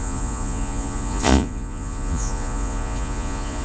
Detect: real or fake fake